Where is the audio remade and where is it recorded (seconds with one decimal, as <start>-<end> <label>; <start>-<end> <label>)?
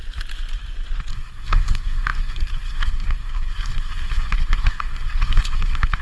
0.0-1.1 recorded; 1.1-6.0 remade